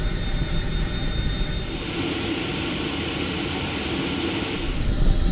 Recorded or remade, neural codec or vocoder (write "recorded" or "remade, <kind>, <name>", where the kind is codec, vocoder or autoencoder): recorded